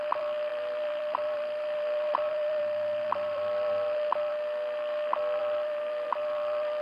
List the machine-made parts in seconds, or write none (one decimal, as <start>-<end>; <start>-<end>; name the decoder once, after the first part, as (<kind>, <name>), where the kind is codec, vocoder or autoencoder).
0.0-4.3 (vocoder, BigVGAN v2); 5.4-6.8